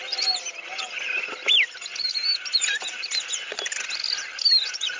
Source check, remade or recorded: recorded